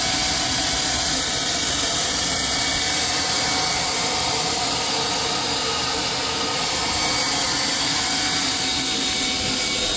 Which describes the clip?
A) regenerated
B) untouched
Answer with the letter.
B